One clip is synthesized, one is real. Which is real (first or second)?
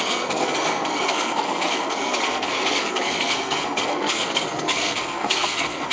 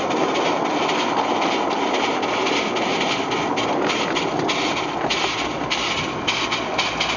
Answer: second